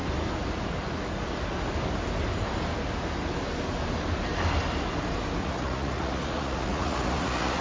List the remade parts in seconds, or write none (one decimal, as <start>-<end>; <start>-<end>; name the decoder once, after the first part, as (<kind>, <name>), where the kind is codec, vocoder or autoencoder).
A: 5.4-7.6 (vocoder, Vocos)